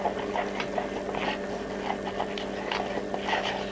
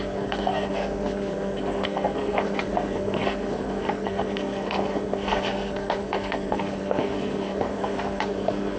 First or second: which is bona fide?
first